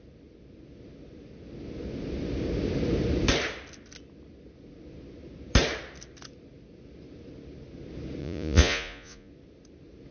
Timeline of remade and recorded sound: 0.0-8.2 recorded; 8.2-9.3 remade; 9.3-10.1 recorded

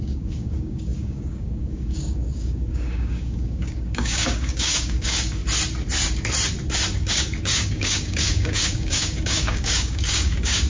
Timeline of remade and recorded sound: 0.0-5.4 remade; 5.4-6.9 recorded; 6.9-10.7 remade